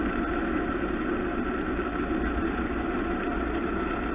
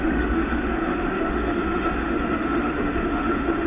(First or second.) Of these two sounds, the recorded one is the first